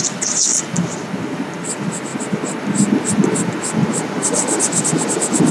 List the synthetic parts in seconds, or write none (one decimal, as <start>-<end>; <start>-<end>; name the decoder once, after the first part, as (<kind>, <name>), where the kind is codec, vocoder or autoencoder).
3.8-4.9 (vocoder, BigVGAN v2)